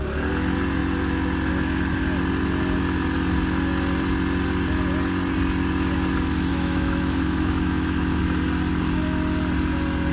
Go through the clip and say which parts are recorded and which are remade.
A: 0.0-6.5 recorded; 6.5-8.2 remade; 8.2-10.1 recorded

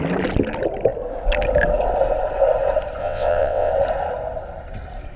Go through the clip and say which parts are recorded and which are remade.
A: 0.0-3.0 recorded; 3.0-3.7 remade; 3.7-5.2 recorded

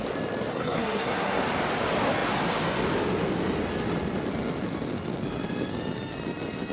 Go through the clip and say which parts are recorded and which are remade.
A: 0.0-0.5 recorded; 0.5-1.4 remade; 1.4-6.7 recorded